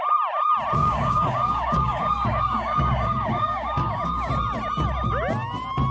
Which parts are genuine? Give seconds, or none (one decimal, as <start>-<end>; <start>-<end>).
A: 0.0-0.8; 4.3-5.9

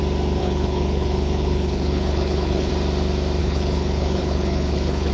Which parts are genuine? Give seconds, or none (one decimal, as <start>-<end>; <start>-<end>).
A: 0.0-0.4; 2.7-3.4

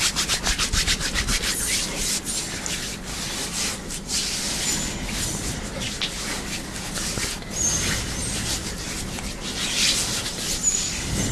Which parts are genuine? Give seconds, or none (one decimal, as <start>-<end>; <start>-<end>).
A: 0.0-1.3; 2.1-8.2; 9.2-11.3